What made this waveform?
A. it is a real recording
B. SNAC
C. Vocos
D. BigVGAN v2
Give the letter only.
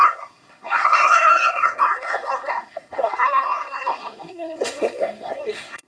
B